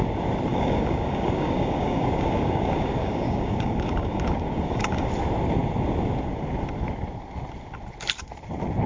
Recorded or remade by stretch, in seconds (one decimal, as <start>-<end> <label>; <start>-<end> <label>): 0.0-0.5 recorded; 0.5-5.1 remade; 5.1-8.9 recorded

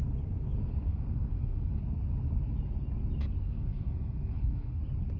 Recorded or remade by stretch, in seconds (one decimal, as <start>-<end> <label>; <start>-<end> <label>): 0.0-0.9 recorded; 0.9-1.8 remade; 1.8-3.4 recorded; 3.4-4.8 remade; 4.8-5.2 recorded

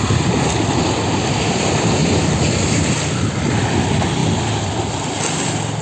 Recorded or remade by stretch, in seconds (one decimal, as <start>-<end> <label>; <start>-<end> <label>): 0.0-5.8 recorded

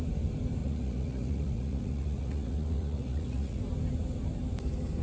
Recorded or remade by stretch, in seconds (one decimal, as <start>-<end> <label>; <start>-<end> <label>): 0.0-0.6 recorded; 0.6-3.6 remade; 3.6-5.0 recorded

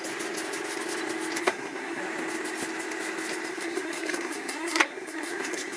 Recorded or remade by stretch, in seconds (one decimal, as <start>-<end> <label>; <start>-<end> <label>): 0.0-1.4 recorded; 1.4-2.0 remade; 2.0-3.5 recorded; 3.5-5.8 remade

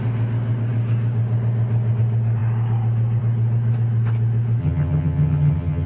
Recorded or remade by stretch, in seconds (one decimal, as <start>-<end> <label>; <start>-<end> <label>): 0.0-4.6 recorded; 4.6-5.9 remade